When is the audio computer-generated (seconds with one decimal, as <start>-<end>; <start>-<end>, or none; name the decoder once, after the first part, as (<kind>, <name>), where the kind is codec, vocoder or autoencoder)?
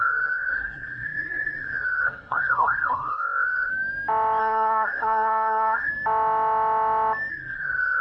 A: 0.0-3.7 (codec, SNAC); 4.4-5.9; 7.3-8.0